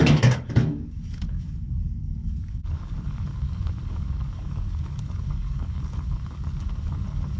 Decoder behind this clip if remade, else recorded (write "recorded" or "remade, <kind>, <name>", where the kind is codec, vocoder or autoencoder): remade, codec, DAC